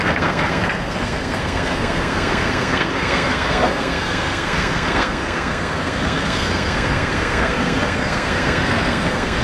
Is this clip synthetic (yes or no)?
yes